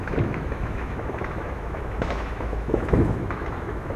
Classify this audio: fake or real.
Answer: fake